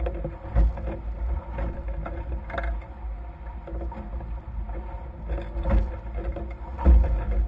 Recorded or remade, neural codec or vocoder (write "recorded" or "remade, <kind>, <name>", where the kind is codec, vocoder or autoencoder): recorded